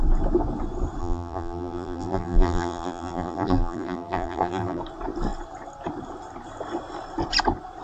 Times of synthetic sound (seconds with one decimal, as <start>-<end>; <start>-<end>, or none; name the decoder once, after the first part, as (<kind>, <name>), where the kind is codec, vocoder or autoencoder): 1.0-4.8 (vocoder, BigVGAN v2)